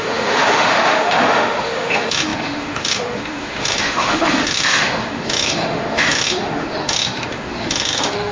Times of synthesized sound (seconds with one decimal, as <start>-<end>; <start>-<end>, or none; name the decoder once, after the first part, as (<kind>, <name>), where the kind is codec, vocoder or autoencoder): 0.0-8.3 (autoencoder, DAC-VAE)